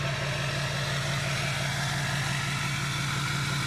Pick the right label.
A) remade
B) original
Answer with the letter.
B